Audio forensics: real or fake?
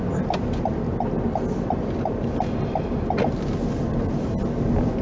real